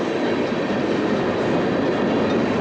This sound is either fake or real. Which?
real